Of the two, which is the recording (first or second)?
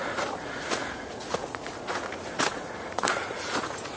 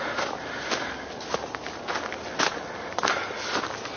second